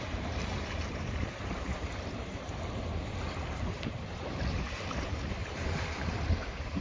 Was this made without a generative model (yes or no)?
no